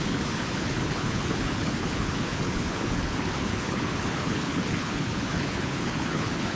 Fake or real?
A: fake